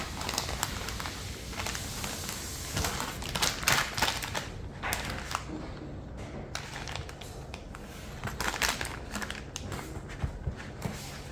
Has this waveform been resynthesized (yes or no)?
no